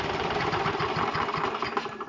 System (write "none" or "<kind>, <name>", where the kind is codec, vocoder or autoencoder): vocoder, BigVGAN v2